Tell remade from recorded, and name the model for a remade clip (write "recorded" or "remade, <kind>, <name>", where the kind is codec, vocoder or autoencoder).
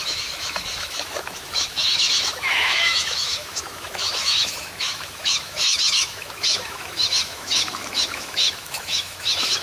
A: remade, autoencoder, DAC-VAE